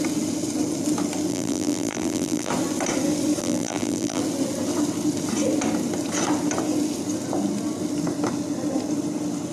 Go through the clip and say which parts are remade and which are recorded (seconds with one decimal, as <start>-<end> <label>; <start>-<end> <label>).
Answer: 0.0-1.3 recorded; 1.3-2.5 remade; 2.5-3.4 recorded; 3.4-4.2 remade; 4.2-9.5 recorded